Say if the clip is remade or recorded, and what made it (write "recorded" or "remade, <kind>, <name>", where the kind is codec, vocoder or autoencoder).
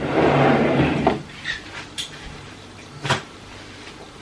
remade, vocoder, BigVGAN v2